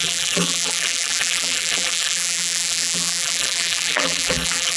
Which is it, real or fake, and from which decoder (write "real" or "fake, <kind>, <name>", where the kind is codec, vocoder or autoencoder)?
fake, vocoder, BigVGAN v2